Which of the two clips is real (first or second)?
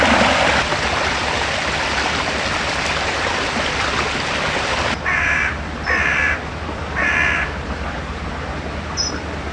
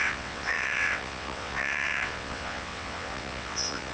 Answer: first